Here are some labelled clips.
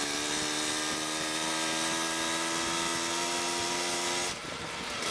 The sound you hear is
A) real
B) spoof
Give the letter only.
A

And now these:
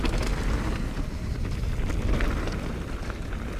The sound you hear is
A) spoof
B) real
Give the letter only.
B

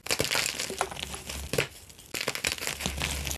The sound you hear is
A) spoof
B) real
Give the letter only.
B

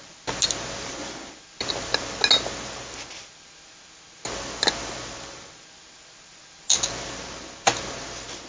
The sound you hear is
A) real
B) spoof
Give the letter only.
A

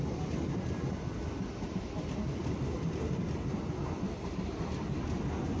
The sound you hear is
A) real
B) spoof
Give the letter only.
A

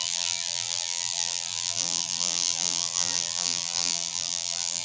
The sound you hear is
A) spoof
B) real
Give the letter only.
A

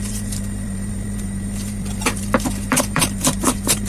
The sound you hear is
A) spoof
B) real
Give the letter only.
A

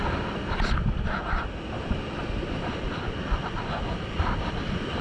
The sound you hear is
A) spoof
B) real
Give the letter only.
B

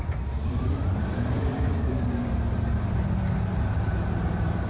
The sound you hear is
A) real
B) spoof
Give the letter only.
B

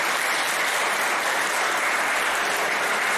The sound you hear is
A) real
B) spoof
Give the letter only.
B